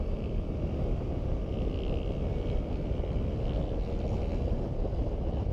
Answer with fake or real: real